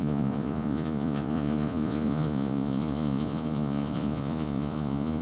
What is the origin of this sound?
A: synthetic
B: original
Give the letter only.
A